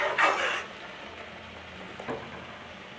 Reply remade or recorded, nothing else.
recorded